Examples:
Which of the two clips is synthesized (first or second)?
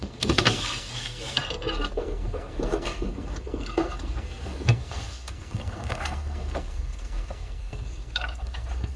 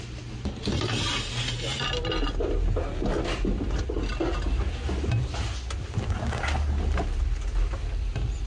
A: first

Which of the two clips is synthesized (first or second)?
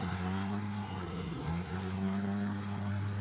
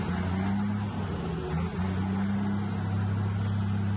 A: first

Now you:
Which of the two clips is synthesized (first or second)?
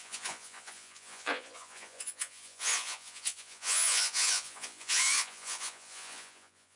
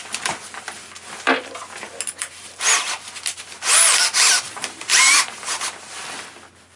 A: first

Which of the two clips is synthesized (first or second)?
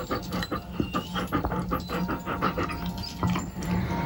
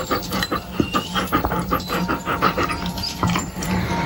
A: second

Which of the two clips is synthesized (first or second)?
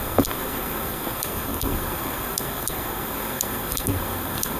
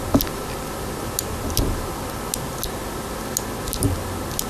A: first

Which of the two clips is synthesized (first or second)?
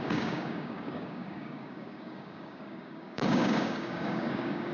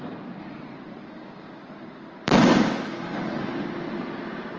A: first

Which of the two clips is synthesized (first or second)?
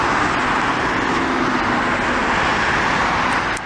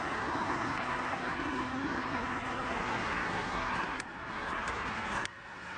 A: second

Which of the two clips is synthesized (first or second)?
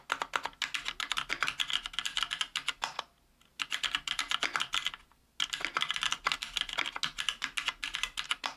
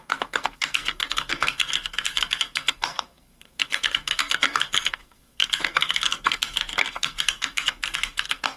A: second